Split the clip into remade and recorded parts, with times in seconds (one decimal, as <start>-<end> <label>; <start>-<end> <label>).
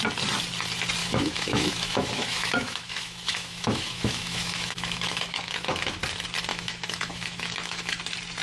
0.0-1.0 recorded; 1.0-6.0 remade; 6.0-6.5 recorded; 6.5-8.0 remade; 8.0-8.4 recorded